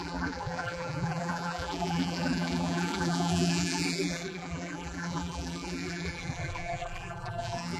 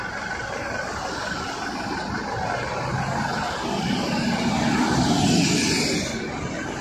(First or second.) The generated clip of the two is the first